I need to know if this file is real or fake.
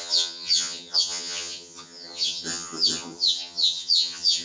fake